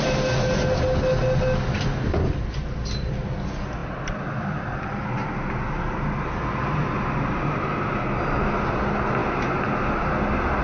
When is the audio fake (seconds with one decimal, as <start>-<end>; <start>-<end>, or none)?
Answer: 3.8-5.1